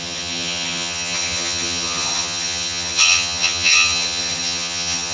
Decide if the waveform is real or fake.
fake